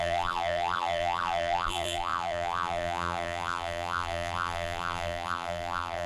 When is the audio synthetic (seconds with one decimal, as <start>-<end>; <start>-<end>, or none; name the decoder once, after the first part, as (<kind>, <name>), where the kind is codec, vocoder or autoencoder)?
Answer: 0.0-6.1 (vocoder, BigVGAN v2)